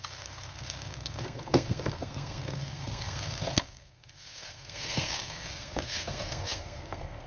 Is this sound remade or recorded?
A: remade